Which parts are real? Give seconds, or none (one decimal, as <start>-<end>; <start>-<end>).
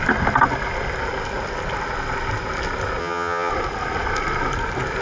0.0-3.0; 3.5-5.0